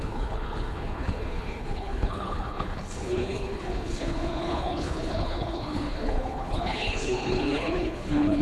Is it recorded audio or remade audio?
remade